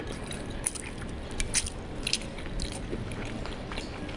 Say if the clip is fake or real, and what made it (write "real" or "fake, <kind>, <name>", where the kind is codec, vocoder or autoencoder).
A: real